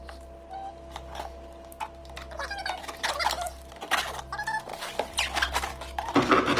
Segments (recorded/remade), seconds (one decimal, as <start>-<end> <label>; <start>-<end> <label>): 0.0-2.0 recorded; 2.0-2.8 remade; 2.8-4.7 recorded; 4.7-6.6 remade